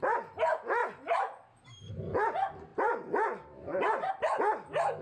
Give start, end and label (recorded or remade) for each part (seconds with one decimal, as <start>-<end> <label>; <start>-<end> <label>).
0.0-0.8 recorded; 0.8-1.9 remade; 1.9-5.0 recorded